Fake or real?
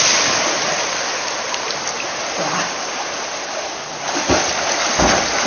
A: real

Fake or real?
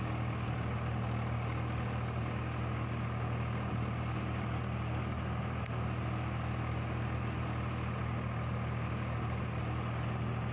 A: real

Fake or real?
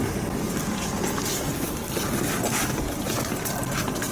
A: real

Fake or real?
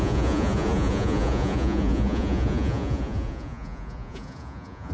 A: fake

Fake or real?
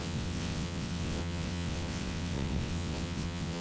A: fake